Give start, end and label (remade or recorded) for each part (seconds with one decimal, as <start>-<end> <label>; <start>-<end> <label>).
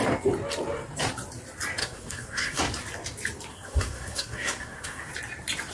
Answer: 0.0-1.8 recorded; 1.8-2.6 remade; 2.6-3.5 recorded; 3.5-5.1 remade; 5.1-5.7 recorded